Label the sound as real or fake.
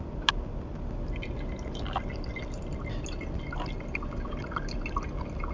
real